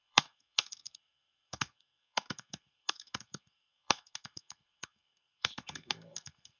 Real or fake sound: fake